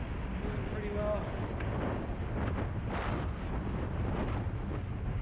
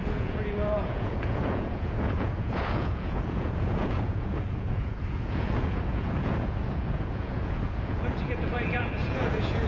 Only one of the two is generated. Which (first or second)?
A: second